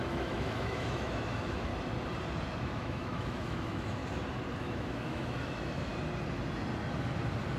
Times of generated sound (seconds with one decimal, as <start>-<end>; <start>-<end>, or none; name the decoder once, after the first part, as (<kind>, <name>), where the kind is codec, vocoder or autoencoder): 0.0-1.7 (autoencoder, DAC-VAE); 2.6-4.0; 4.6-5.9

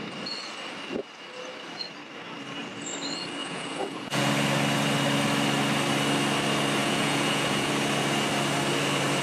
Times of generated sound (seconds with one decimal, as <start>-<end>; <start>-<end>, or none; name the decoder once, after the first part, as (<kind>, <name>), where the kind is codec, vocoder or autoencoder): 3.4-4.3 (vocoder, Vocos); 6.8-7.7

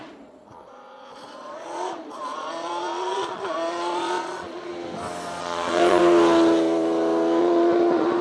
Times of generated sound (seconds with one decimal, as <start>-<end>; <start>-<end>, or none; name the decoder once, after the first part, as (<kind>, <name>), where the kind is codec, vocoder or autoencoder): 0.0-4.7 (vocoder, Vocos); 5.4-6.0; 7.4-8.2

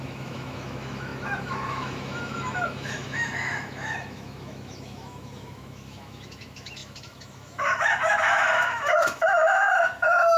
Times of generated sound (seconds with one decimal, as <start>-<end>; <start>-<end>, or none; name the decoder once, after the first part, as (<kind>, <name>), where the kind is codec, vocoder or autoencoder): 0.0-10.4 (autoencoder, DAC-VAE)

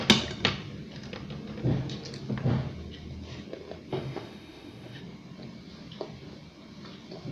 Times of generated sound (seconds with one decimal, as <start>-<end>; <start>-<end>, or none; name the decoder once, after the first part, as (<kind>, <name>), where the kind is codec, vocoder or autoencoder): 3.9-5.0 (autoencoder, DAC-VAE)

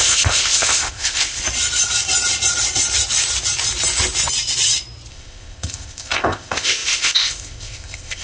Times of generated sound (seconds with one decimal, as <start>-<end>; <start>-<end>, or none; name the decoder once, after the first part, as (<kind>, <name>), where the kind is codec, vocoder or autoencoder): 0.0-1.4 (codec, ZipCodec); 5.1-8.2